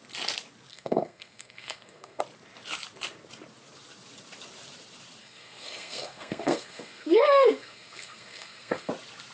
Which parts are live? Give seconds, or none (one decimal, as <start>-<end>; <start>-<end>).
0.0-0.7; 2.2-5.2; 8.9-9.3